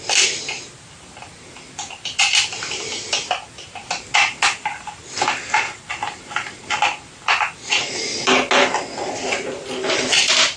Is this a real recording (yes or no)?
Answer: yes